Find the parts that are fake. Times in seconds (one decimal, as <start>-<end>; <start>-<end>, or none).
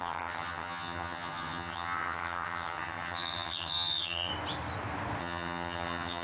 0.0-4.3; 5.2-6.2